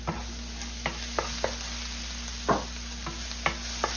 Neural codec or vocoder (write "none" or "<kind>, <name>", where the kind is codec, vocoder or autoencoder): none